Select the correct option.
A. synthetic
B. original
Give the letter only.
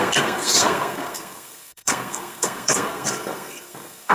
A